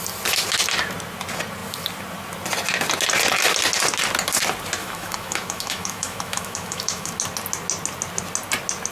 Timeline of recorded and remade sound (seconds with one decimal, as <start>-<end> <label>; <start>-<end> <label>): 0.0-4.8 recorded; 4.8-7.1 remade; 7.1-8.9 recorded